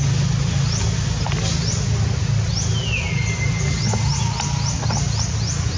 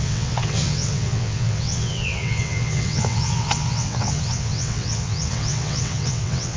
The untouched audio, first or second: first